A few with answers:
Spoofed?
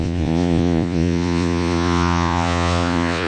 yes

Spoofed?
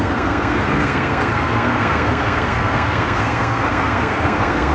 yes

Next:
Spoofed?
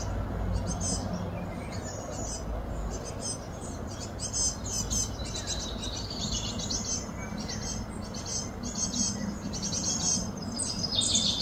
no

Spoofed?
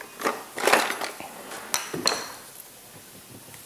no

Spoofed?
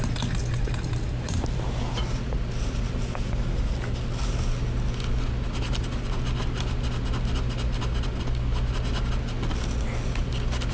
no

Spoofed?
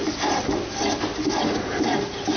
no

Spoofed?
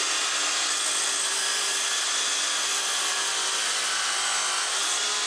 no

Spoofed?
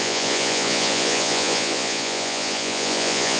yes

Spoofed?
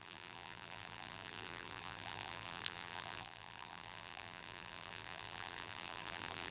yes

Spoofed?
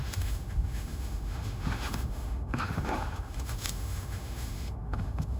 yes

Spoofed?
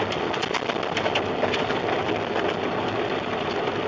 no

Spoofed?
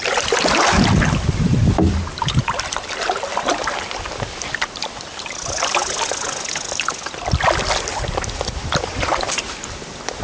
no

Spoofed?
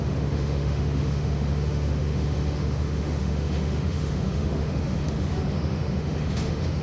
yes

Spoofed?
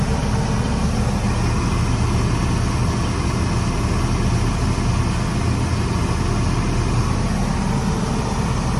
no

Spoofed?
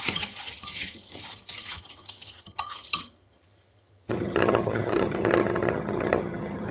yes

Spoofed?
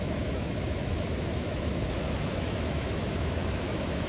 yes